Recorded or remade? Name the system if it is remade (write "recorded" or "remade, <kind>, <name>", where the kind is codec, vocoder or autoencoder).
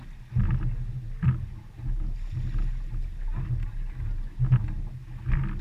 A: recorded